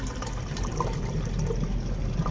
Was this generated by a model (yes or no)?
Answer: no